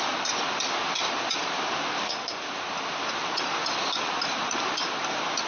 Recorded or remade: recorded